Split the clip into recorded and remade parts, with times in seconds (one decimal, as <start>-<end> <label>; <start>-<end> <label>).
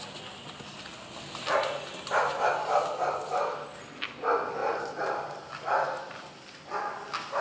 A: 0.0-7.4 recorded